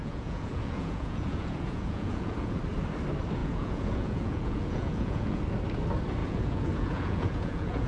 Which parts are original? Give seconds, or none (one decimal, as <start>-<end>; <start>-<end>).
2.6-3.4; 5.4-6.2